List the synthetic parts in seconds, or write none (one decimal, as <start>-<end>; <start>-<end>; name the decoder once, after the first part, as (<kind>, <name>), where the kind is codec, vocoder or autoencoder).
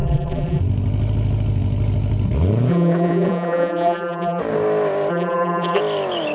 0.0-0.6 (vocoder, BigVGAN v2); 2.7-4.4; 5.1-5.8